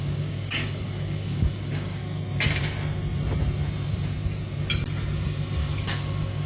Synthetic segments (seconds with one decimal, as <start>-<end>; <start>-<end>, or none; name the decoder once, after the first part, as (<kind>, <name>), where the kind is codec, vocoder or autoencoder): 0.0-2.0 (codec, DAC); 5.6-6.5